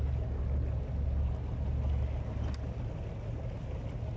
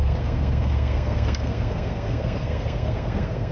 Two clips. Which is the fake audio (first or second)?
second